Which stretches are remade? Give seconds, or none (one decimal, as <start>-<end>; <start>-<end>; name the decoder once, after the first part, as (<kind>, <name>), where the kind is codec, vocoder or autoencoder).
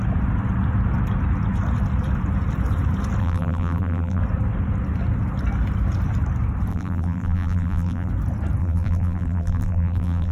3.2-4.2 (vocoder, BigVGAN v2); 6.7-8.1; 8.6-10.3